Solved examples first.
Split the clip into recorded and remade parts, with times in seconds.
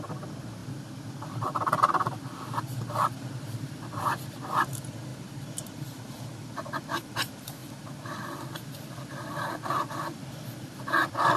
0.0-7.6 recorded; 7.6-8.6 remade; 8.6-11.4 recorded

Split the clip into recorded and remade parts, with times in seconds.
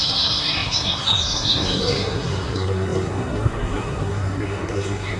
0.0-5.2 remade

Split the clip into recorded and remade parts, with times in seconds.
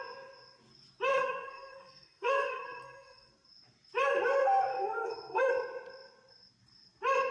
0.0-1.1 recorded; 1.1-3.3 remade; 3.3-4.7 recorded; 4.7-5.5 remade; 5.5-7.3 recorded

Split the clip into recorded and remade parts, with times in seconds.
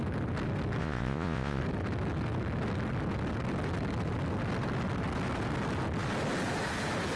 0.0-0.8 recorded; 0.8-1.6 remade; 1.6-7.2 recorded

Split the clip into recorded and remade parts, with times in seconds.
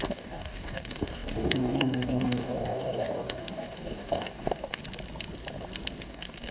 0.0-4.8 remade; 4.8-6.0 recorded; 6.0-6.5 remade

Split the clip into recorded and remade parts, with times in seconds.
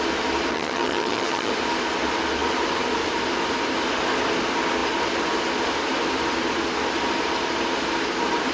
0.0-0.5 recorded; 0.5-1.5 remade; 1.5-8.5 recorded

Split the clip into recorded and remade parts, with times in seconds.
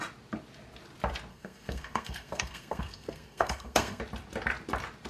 0.0-1.3 recorded; 1.3-4.0 remade; 4.0-5.1 recorded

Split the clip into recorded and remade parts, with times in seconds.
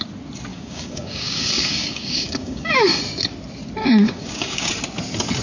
0.0-0.5 recorded; 0.5-3.0 remade; 3.0-3.8 recorded; 3.8-4.7 remade; 4.7-5.4 recorded